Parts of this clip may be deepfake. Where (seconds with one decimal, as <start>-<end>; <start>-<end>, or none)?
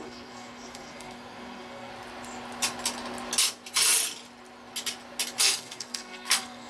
0.0-1.9; 5.4-6.7